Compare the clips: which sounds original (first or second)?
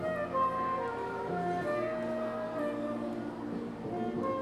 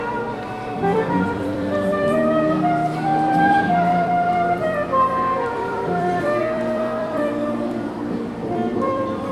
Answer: first